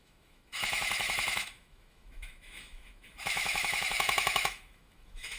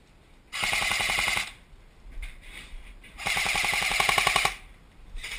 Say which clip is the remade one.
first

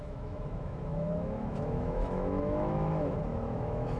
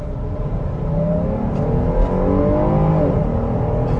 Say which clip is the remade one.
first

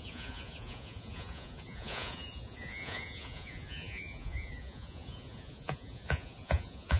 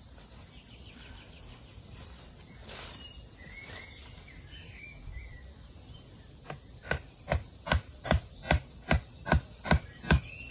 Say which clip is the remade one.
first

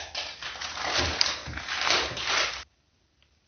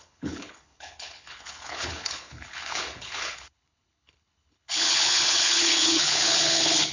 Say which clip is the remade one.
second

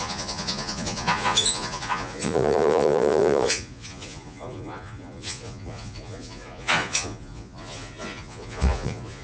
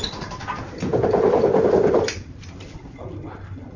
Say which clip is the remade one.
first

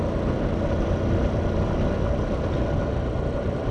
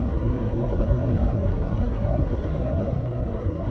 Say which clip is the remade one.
second